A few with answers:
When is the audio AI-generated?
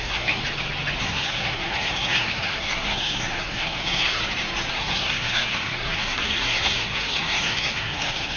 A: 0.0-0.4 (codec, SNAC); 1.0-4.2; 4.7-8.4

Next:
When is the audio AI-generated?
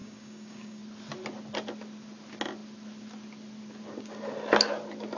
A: 0.0-0.8 (codec, DAC)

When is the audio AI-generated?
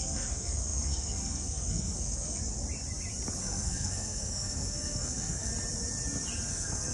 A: 0.0-2.4 (codec, SNAC); 3.4-5.5; 6.5-6.9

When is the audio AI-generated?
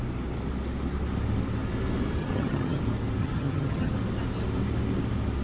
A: 2.2-2.8 (vocoder, HiFi-GAN); 3.2-3.9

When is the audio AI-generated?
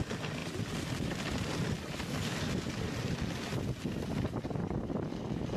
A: none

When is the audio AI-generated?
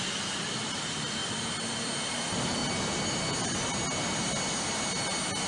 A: 0.0-1.2 (vocoder, BigVGAN v2); 2.0-2.6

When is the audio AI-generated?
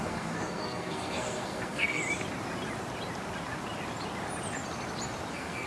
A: 0.0-2.0 (codec, SNAC); 5.3-5.7